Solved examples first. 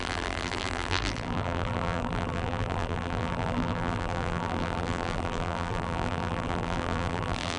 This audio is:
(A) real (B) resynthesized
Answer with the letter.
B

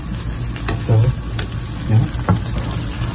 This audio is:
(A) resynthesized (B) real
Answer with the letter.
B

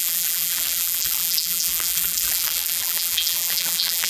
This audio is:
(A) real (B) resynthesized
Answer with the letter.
B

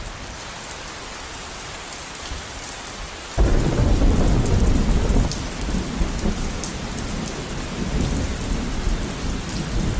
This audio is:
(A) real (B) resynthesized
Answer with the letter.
B